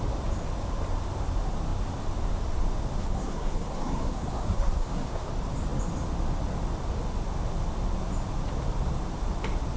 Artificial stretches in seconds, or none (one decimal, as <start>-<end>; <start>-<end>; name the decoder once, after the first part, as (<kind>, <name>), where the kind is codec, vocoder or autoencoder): 3.0-5.3 (codec, SNAC)